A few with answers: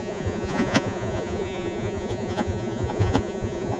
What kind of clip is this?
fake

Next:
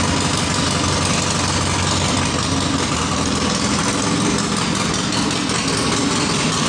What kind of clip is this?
real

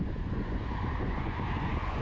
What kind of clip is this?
fake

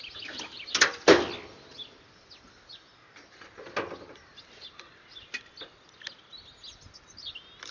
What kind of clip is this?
real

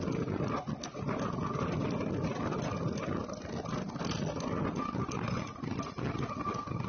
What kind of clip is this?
real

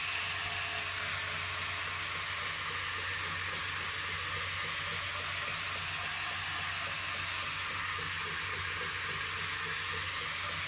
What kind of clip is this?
real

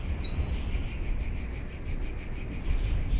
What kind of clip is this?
real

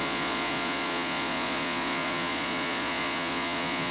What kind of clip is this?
fake